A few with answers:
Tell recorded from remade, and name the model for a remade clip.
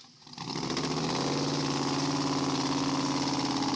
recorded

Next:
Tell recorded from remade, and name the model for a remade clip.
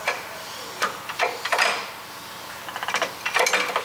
recorded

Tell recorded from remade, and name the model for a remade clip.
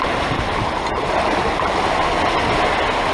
recorded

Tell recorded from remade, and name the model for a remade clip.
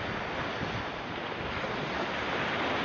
recorded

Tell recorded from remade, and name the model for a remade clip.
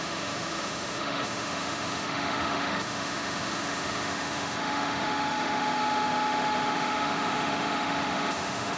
remade, autoencoder, DAC-VAE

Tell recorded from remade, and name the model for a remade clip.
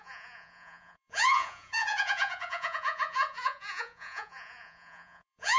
remade, vocoder, Vocos